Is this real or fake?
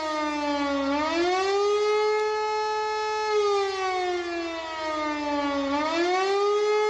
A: real